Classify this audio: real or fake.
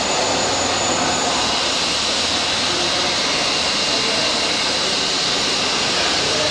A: real